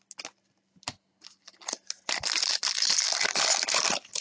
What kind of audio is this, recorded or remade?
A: recorded